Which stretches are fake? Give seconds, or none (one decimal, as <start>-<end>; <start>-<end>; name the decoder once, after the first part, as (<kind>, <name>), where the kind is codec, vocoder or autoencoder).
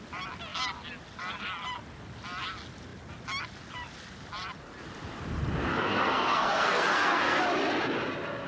5.7-7.4 (codec, SNAC)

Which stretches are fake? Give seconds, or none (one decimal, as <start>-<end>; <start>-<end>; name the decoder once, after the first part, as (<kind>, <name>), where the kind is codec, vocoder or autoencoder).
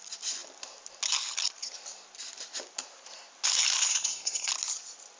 3.9-4.5 (codec, SNAC)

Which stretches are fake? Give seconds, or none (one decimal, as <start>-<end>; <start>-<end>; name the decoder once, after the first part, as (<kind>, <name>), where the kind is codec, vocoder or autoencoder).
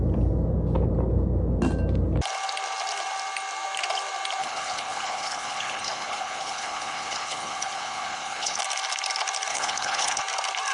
4.4-8.6 (codec, HILCodec); 9.5-10.2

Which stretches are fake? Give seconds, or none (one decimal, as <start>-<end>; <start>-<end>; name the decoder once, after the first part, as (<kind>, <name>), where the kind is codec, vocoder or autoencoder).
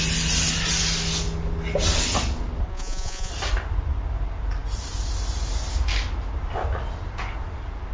2.7-3.3 (vocoder, Vocos)